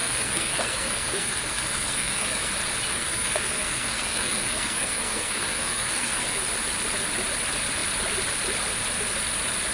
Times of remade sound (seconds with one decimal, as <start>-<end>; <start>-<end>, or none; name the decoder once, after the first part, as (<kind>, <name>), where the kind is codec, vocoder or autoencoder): 0.0-2.5 (codec, SNAC); 2.9-6.4